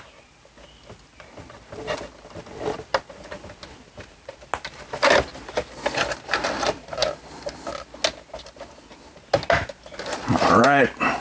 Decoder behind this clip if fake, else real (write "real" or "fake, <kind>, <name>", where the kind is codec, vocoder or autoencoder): real